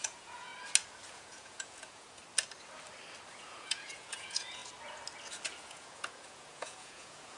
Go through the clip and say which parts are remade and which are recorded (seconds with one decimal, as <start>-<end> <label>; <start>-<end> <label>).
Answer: 0.0-0.5 remade; 0.5-1.1 recorded; 1.1-2.2 remade; 2.2-3.3 recorded; 3.3-4.6 remade; 4.6-5.6 recorded; 5.6-7.4 remade